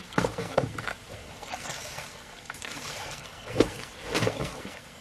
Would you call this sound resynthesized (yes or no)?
yes